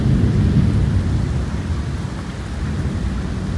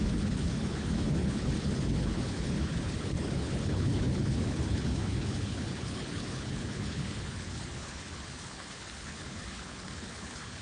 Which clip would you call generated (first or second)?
second